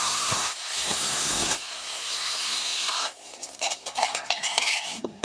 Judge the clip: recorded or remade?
remade